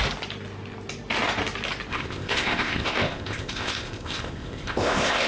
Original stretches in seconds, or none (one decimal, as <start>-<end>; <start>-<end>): 0.0-1.9